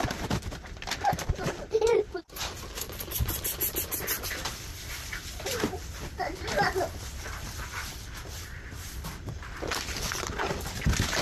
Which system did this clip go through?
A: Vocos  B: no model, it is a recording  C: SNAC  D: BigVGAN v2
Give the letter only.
D